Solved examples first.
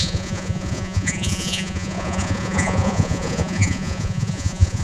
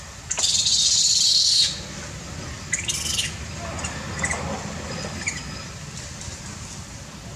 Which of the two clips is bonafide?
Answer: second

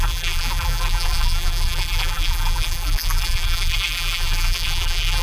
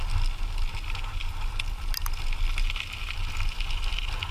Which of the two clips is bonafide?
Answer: second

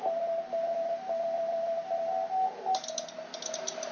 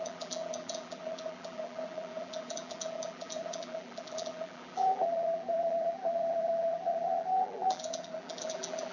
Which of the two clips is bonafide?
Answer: first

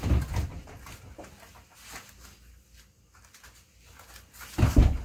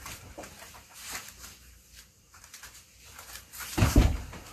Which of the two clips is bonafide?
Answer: first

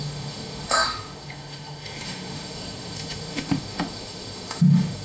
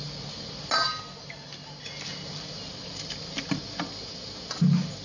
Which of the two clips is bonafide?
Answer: second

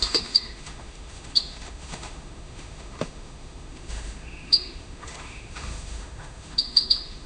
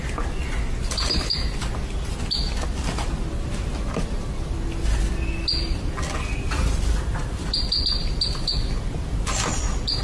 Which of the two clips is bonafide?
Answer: second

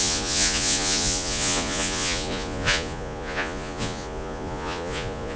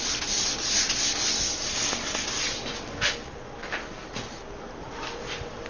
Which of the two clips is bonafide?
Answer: second